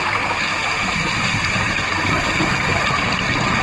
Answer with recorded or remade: recorded